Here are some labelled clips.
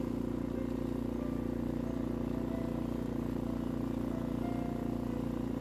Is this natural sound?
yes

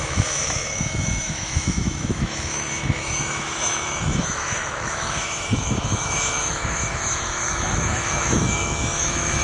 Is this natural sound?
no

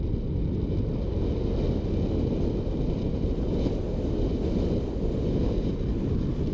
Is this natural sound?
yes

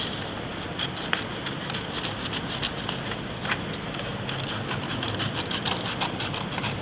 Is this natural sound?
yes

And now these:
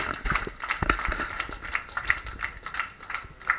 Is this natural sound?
yes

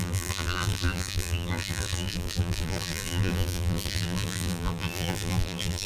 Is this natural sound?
no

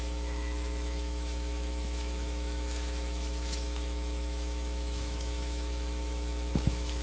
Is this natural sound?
no